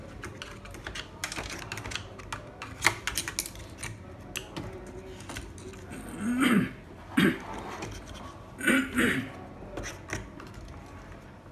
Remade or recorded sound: recorded